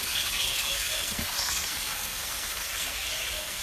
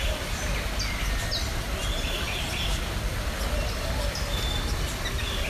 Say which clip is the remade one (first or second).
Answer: first